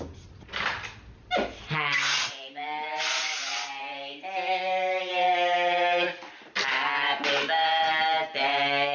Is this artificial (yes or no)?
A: no